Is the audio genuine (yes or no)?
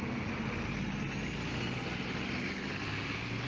yes